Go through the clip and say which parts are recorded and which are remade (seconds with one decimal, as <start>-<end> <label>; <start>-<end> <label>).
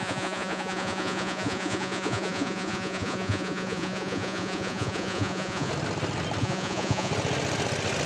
0.0-5.7 remade; 5.7-6.4 recorded; 6.4-7.1 remade; 7.1-8.1 recorded